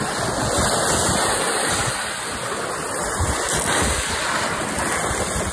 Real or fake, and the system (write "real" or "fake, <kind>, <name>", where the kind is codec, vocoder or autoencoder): real